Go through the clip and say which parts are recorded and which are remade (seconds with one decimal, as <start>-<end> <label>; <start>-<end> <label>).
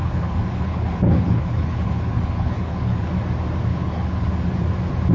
0.0-3.1 remade; 3.1-3.7 recorded; 3.7-4.3 remade; 4.3-5.1 recorded